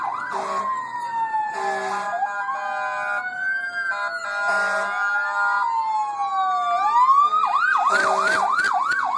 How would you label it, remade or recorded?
recorded